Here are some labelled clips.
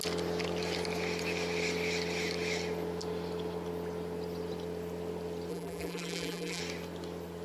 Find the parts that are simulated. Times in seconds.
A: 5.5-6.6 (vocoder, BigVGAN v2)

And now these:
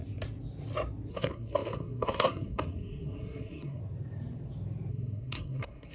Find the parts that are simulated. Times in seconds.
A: 1.1-3.8 (codec, SNAC); 4.9-5.9

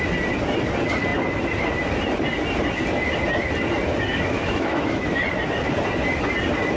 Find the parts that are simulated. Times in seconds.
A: 4.1-5.2 (autoencoder, DAC-VAE)

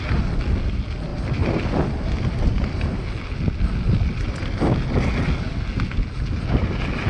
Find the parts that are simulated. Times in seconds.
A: none

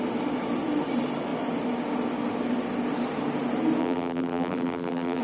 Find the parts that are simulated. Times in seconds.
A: 3.8-5.2 (vocoder, BigVGAN v2)

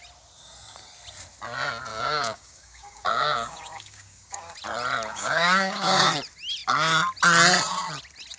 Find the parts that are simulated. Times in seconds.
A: 1.9-4.5 (codec, DAC); 5.1-6.1